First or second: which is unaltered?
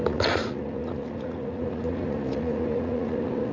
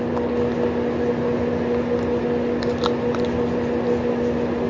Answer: second